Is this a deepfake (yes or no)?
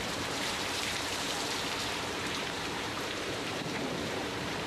yes